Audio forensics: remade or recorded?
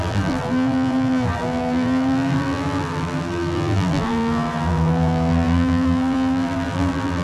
remade